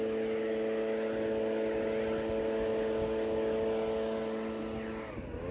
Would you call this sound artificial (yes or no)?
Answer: no